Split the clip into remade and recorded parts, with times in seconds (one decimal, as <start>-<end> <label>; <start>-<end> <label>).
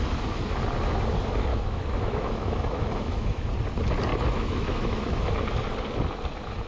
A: 0.0-1.5 recorded; 1.5-3.5 remade; 3.5-4.1 recorded; 4.1-5.3 remade; 5.3-6.7 recorded